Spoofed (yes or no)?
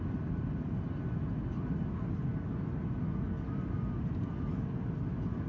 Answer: no